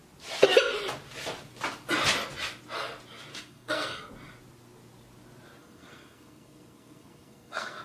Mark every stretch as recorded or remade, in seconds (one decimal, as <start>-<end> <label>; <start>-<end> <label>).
0.0-3.3 recorded; 3.3-4.1 remade; 4.1-5.6 recorded; 5.6-7.8 remade